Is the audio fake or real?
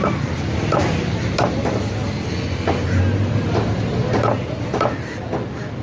real